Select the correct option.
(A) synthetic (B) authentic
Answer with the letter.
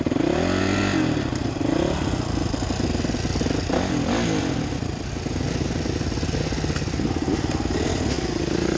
B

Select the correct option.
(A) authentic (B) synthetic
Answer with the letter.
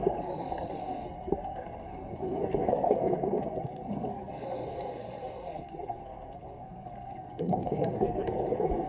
B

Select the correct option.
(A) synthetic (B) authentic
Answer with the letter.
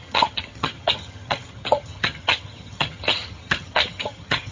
A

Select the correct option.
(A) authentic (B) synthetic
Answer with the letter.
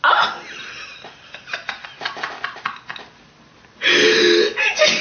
A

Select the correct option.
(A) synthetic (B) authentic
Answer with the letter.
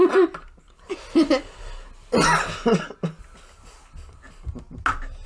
B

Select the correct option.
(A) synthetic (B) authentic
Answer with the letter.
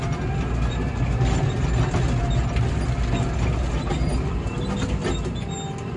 B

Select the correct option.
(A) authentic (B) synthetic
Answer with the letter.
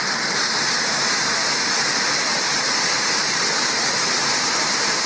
A